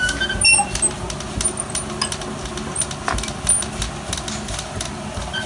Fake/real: real